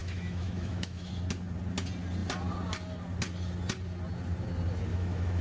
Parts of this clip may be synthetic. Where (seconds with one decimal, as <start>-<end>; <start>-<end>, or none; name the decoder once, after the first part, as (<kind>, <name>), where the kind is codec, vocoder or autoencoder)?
0.0-1.1 (autoencoder, DAC-VAE); 4.9-5.4